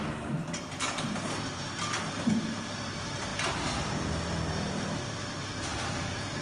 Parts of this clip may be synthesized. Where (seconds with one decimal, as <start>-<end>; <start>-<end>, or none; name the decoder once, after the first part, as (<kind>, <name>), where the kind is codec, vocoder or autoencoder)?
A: 0.0-6.4 (vocoder, BigVGAN v2)

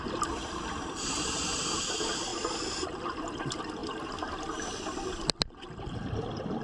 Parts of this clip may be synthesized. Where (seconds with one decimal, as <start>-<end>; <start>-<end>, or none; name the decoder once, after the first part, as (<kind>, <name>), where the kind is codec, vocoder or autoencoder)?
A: 0.0-3.8 (vocoder, BigVGAN v2); 5.6-6.6

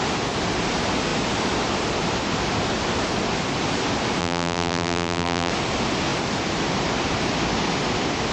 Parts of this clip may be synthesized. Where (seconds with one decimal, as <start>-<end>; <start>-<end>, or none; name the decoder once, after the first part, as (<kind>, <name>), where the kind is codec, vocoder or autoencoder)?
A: 4.2-5.5 (vocoder, BigVGAN v2)

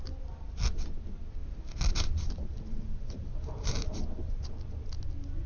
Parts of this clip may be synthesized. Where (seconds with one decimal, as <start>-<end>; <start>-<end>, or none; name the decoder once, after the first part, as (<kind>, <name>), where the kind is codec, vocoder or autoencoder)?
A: 1.4-4.5 (vocoder, BigVGAN v2)

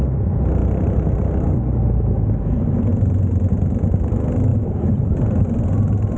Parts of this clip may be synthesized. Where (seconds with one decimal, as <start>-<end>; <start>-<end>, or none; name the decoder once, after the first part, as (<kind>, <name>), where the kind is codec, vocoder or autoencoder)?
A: 4.5-5.1 (vocoder, BigVGAN v2)

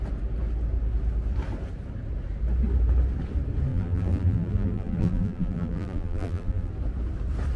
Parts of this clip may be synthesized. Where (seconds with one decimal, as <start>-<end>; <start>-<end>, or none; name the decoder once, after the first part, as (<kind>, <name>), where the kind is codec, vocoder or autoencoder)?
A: 3.7-6.7 (vocoder, BigVGAN v2)